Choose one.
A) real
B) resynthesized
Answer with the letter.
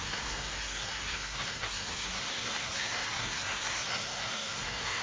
B